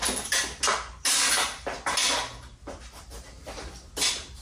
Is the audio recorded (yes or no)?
yes